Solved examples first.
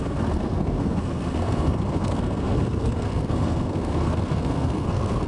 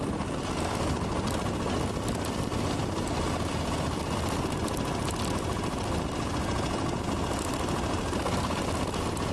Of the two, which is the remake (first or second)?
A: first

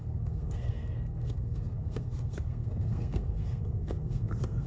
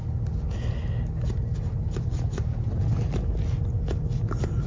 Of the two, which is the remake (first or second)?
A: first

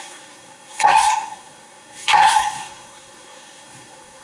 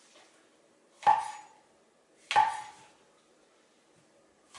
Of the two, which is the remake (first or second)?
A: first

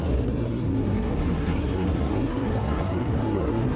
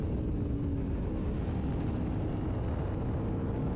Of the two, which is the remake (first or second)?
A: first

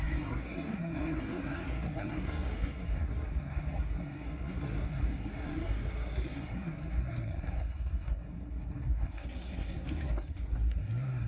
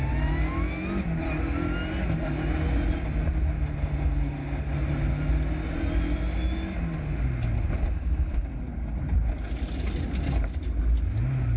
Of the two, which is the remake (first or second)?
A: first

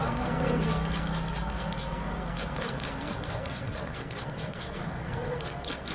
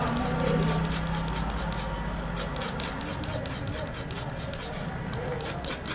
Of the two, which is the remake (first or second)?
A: first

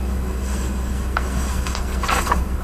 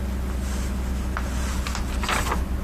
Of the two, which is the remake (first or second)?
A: first